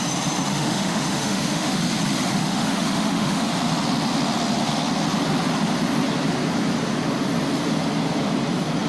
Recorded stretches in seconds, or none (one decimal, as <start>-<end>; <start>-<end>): 0.0-0.5; 1.8-2.3; 3.5-8.9